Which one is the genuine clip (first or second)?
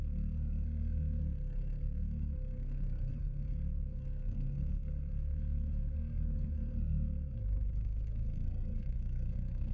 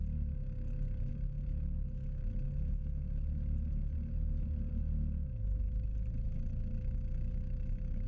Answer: second